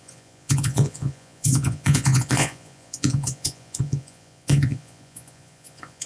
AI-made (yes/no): yes